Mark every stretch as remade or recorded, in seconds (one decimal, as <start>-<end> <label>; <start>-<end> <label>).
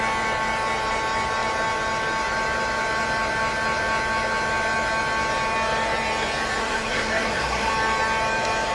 0.0-6.6 recorded; 6.6-7.7 remade; 7.7-8.7 recorded